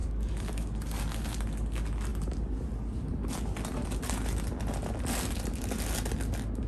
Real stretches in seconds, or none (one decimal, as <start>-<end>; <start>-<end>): 1.0-6.7